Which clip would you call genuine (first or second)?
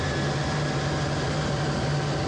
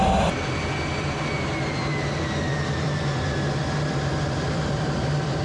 first